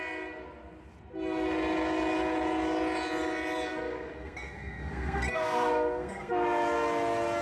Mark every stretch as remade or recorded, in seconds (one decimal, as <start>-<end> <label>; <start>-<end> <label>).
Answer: 0.0-3.7 recorded; 3.7-6.3 remade; 6.3-7.4 recorded